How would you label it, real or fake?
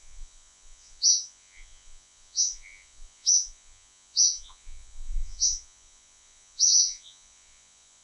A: fake